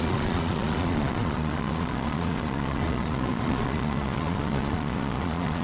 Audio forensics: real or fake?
fake